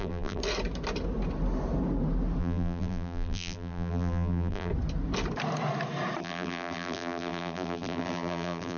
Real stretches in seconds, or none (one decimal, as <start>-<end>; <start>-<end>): 0.4-2.4; 4.7-6.2